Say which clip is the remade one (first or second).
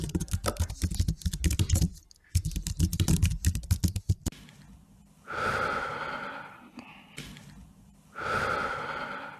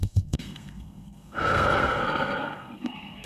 second